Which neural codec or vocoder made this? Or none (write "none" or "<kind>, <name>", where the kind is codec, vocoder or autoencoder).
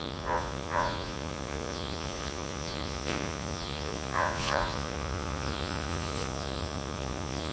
vocoder, Vocos